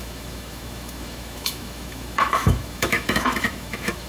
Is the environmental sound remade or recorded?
remade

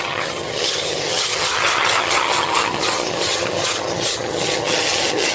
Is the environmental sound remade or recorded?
remade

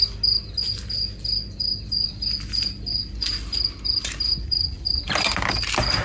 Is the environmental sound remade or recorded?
recorded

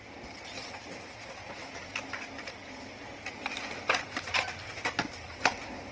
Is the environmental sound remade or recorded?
recorded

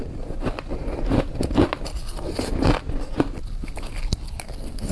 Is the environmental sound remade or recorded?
recorded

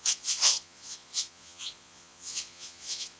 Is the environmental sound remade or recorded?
remade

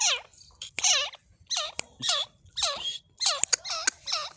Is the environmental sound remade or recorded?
recorded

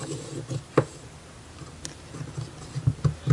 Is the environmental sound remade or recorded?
recorded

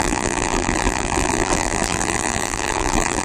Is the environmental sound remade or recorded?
remade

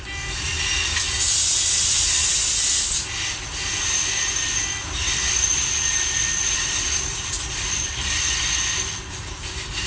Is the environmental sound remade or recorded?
remade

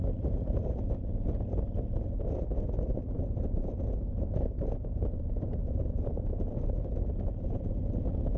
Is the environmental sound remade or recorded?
recorded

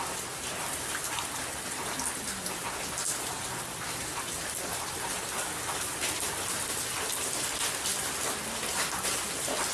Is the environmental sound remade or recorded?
recorded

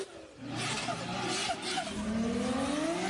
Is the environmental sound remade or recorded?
recorded